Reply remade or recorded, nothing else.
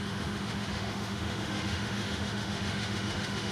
remade